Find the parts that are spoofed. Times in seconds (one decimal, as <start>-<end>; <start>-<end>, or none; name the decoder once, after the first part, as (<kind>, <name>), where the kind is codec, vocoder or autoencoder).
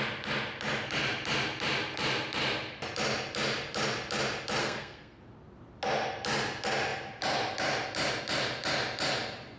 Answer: 4.6-5.2 (codec, SNAC)